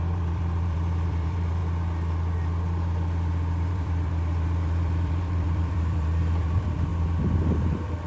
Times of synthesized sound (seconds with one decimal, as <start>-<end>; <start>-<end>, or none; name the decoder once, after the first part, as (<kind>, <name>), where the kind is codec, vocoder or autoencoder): 0.0-1.6 (vocoder, BigVGAN v2); 3.7-6.9; 7.5-8.1